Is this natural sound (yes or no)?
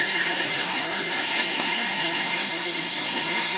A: no